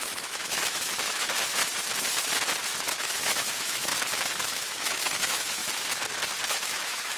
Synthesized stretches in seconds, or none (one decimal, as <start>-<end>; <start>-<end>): 0.0-1.6; 2.8-3.9; 4.4-5.6; 6.5-7.2